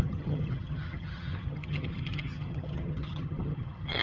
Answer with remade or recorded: remade